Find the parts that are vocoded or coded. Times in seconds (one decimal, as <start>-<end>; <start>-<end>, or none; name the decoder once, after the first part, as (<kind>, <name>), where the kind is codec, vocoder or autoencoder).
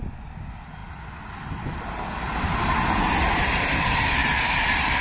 0.0-5.0 (vocoder, BigVGAN v2)